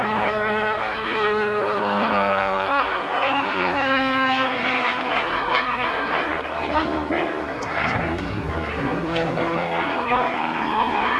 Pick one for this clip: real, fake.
fake